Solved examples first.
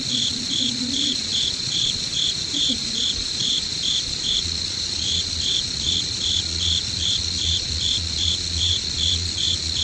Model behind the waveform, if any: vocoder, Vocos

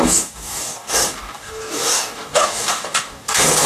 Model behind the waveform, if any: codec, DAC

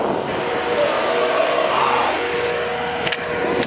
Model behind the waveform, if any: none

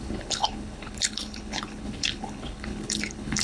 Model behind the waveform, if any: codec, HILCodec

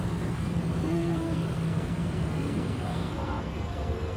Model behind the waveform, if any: codec, SNAC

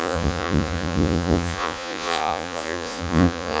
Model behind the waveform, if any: vocoder, Vocos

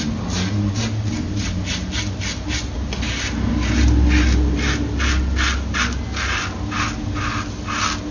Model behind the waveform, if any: none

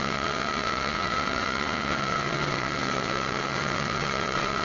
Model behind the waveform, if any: vocoder, WaveNeXt